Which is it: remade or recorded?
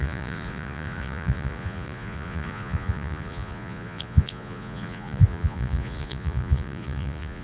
remade